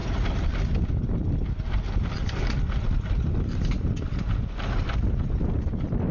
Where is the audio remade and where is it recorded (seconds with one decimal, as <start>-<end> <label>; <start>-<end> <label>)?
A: 0.0-6.1 recorded